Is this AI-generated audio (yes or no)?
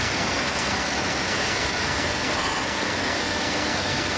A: yes